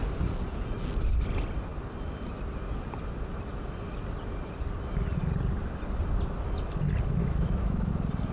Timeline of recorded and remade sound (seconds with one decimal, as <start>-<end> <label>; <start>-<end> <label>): 0.0-7.2 recorded; 7.2-7.9 remade; 7.9-8.3 recorded